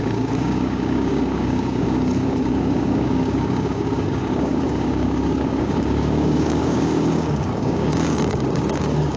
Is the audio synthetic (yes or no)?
yes